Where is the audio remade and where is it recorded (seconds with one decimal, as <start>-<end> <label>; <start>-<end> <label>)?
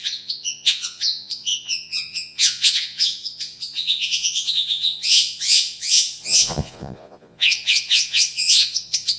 0.0-9.2 remade